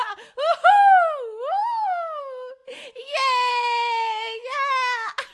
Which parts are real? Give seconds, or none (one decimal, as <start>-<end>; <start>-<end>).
0.0-5.3